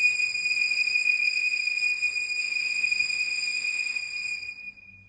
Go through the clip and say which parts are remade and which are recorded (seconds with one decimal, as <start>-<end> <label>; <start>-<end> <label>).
0.0-0.5 recorded; 0.5-1.8 remade; 1.8-2.4 recorded; 2.4-4.0 remade; 4.0-5.1 recorded